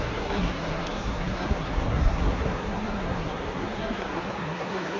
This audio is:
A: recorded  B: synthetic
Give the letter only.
B